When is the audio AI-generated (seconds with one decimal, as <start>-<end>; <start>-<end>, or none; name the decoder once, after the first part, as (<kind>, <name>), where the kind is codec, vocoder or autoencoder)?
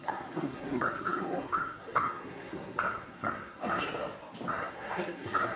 0.0-4.0 (codec, SNAC); 4.5-5.6